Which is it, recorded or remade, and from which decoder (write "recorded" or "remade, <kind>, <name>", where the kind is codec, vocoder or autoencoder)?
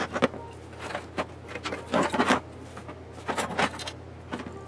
recorded